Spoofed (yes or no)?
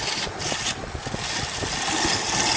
no